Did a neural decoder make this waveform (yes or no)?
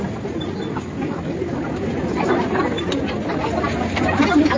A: no